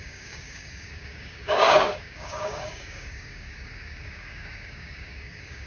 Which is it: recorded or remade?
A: remade